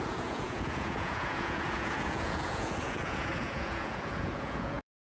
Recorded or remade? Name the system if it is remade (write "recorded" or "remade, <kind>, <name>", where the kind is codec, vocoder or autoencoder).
remade, vocoder, Vocos